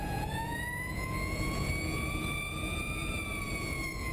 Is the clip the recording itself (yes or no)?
no